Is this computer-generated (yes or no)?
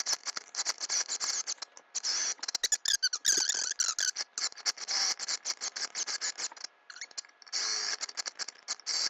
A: no